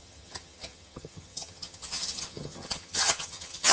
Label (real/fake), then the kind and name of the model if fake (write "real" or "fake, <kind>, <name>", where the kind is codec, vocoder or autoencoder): fake, vocoder, HiFi-GAN